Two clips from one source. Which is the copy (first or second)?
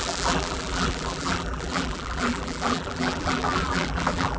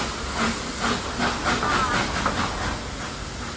first